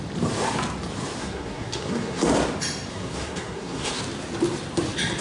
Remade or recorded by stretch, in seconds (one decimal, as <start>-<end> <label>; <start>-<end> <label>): 0.0-1.2 recorded; 1.2-2.2 remade; 2.2-2.9 recorded; 2.9-4.0 remade; 4.0-5.2 recorded